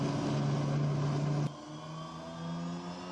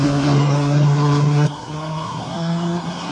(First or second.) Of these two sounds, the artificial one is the second